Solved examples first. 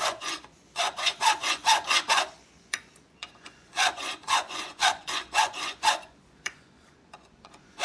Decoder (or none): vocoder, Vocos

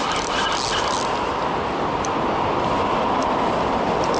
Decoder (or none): none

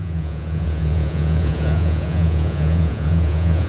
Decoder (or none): vocoder, Vocos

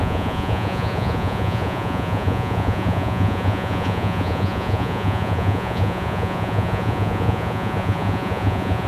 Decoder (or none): vocoder, Vocos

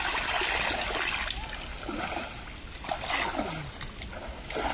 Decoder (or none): none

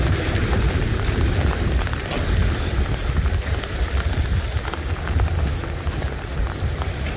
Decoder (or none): none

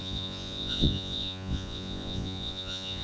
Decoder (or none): vocoder, Vocos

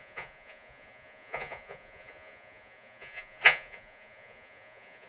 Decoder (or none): vocoder, Vocos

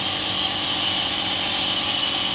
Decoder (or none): none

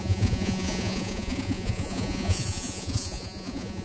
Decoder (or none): vocoder, Vocos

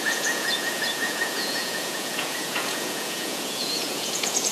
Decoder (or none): vocoder, Vocos